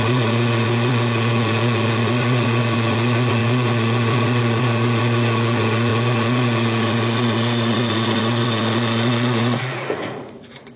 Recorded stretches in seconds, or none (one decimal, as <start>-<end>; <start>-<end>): none